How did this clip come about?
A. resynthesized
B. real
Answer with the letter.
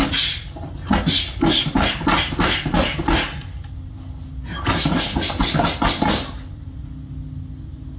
B